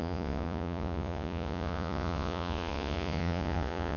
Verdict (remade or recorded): remade